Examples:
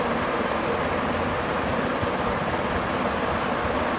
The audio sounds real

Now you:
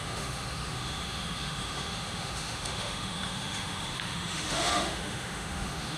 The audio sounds fake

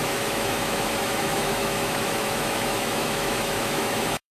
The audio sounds fake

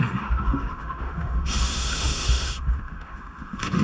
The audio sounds fake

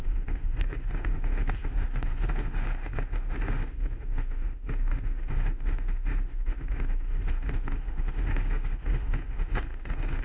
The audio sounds fake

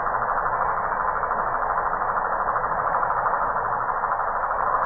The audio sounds real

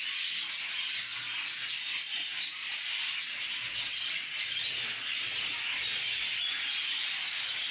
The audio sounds real